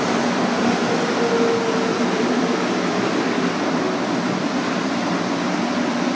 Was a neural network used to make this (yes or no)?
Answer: no